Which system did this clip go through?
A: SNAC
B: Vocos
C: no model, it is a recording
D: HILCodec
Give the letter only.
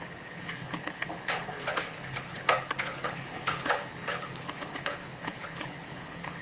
D